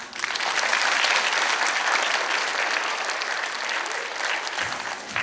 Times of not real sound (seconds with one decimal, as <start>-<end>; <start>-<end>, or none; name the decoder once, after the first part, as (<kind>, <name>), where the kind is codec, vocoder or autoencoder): none